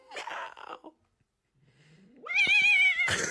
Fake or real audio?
real